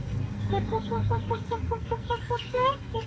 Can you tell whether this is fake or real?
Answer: fake